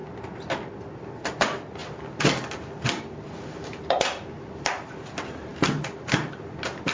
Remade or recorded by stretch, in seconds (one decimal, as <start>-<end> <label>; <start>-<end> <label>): 0.0-6.9 recorded